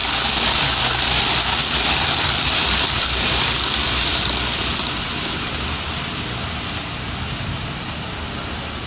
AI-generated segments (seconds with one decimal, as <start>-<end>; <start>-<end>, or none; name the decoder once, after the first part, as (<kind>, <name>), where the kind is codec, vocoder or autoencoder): none